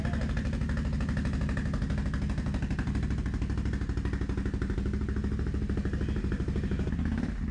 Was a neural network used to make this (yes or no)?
no